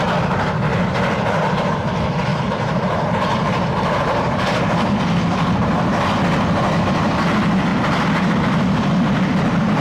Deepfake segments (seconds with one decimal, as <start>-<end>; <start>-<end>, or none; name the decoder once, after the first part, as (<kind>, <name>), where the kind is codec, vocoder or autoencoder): 0.7-1.7 (vocoder, BigVGAN v2); 2.3-4.9

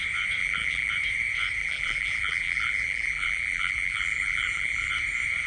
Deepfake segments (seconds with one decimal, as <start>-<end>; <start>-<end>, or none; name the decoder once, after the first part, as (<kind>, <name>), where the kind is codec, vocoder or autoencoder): 0.4-0.9 (vocoder, BigVGAN v2); 1.6-4.9

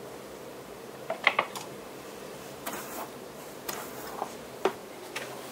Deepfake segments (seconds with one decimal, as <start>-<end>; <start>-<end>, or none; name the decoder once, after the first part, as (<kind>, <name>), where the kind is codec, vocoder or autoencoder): 0.5-3.1 (vocoder, BigVGAN v2)

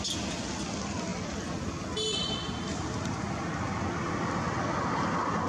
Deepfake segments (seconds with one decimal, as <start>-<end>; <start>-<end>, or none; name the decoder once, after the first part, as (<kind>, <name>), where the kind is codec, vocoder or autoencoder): none

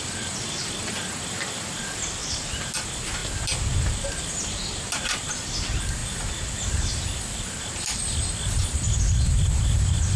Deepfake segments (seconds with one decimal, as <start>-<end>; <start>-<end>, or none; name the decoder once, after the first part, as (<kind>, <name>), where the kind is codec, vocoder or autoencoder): none

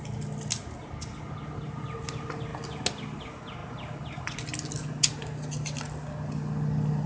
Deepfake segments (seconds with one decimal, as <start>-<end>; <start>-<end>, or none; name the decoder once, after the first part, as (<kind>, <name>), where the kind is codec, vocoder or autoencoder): none

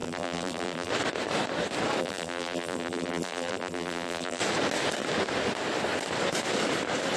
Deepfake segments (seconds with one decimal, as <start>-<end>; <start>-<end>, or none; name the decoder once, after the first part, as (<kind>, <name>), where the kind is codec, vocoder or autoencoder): 0.0-0.9 (vocoder, BigVGAN v2); 2.0-4.4